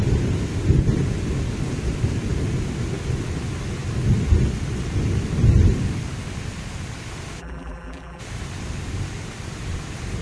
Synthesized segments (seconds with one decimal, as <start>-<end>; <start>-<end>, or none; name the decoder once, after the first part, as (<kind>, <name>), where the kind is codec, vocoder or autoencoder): 7.4-8.2 (vocoder, BigVGAN v2)